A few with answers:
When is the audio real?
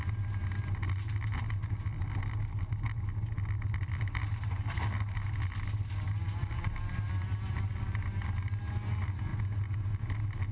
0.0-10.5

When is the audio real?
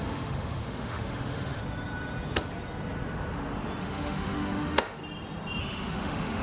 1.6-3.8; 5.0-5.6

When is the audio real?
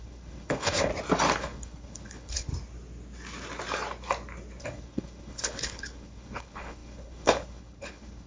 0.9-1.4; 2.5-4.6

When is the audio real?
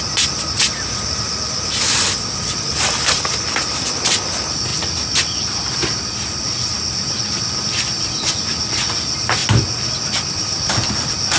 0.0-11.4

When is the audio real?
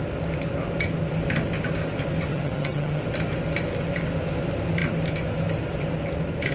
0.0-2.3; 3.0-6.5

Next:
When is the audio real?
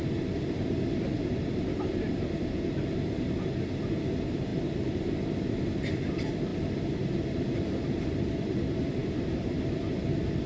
4.5-5.4